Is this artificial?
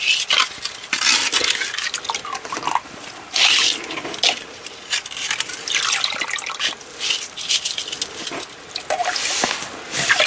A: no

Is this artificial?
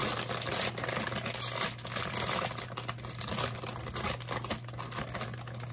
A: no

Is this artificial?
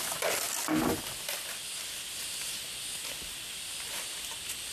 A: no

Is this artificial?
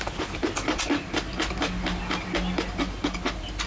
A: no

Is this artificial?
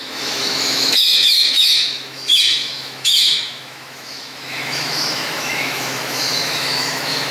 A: yes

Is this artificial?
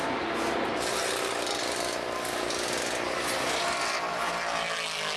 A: no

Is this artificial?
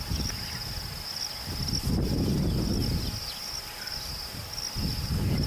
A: no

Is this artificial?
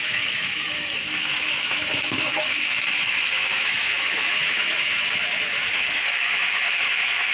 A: yes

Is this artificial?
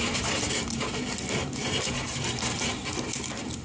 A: no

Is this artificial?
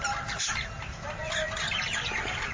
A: no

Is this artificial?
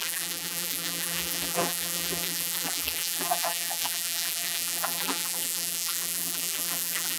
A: yes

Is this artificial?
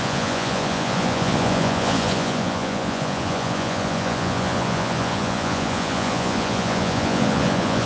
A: yes